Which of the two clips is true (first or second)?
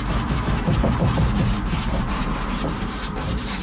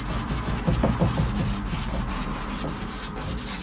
second